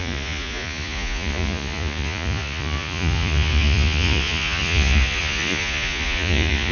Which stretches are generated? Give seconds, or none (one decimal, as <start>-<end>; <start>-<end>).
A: 0.0-6.7

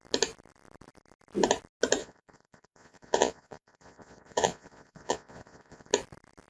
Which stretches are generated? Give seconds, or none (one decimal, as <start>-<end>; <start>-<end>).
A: 2.0-5.9

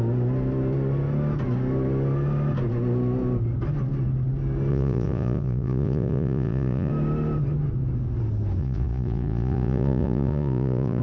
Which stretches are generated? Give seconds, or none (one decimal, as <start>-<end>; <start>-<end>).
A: 4.7-6.9; 8.6-11.0

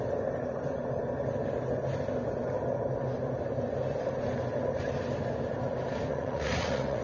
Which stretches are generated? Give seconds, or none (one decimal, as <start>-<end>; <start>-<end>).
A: 6.1-7.0

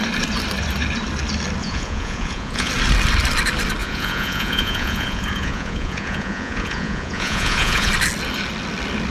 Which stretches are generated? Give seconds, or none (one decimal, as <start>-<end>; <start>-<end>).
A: 1.6-2.7; 3.8-7.9

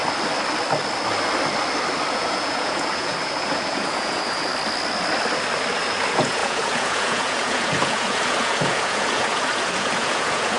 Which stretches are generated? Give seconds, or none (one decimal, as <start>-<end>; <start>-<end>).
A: 2.1-4.5; 5.9-10.6